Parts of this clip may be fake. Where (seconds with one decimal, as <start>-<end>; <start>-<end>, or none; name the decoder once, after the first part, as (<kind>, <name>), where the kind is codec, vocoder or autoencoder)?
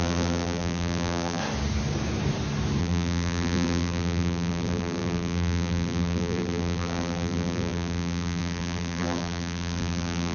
0.0-1.4 (vocoder, BigVGAN v2); 2.8-10.3